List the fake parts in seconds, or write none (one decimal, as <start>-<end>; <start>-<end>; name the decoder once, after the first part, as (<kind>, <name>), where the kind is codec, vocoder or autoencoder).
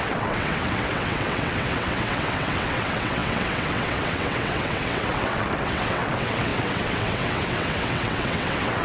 0.0-8.8 (vocoder, WaveNeXt)